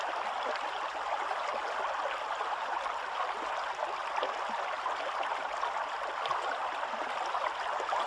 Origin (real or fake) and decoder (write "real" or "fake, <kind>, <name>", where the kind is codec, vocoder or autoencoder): real